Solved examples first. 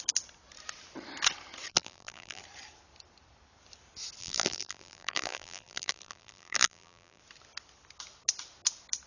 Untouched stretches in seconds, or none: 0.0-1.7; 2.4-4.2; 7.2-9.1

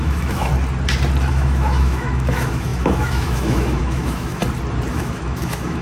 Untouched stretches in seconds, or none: 0.5-1.3; 4.4-4.9

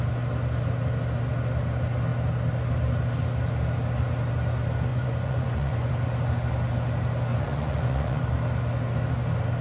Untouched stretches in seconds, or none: 0.0-4.9; 5.9-7.3; 8.2-9.6

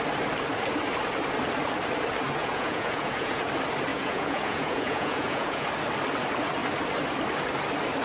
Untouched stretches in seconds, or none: 0.0-2.4; 3.4-3.9; 5.7-8.0

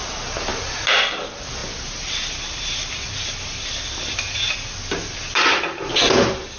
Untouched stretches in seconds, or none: 0.0-6.6

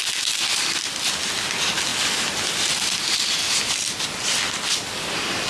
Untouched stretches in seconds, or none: 0.0-5.5

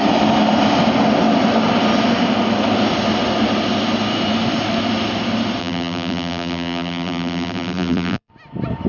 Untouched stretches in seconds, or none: 0.0-5.6; 8.3-8.9

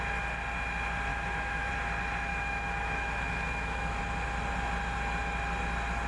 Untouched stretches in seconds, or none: 0.0-1.1; 1.7-2.3; 4.0-6.1